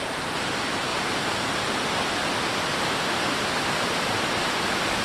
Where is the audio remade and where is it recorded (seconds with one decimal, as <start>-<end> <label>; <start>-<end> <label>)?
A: 0.0-5.0 recorded